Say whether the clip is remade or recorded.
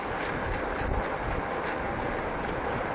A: recorded